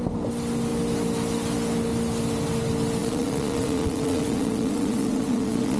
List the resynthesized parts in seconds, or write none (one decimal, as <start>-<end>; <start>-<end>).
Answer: 3.0-5.8